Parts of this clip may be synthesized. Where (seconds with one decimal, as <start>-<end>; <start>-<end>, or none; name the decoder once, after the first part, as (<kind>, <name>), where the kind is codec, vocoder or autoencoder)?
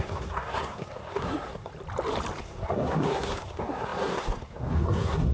0.0-1.7 (codec, SNAC); 2.4-5.3